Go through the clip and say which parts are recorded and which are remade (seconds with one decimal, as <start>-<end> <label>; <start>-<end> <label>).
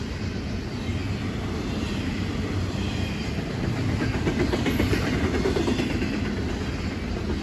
0.0-7.4 recorded